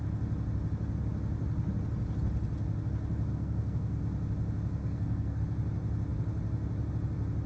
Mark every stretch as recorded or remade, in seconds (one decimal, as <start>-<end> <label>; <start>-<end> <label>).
0.0-3.3 recorded; 3.3-4.0 remade; 4.0-4.8 recorded; 4.8-5.4 remade; 5.4-7.5 recorded